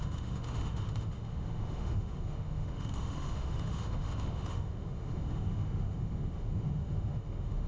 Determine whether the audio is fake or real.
fake